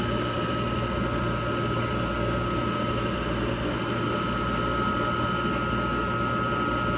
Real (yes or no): yes